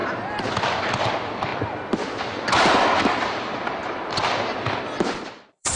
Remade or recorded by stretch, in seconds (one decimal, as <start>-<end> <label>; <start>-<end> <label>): 0.0-0.8 recorded; 0.8-1.5 remade; 1.5-3.1 recorded; 3.1-4.2 remade; 4.2-4.8 recorded; 4.8-5.8 remade